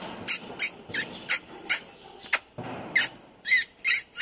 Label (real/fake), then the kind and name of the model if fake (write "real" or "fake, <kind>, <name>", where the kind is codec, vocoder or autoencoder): real